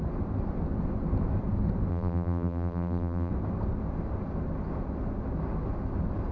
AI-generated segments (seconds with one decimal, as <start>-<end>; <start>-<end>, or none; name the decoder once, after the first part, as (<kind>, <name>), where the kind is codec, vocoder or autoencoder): 1.9-3.3 (vocoder, BigVGAN v2)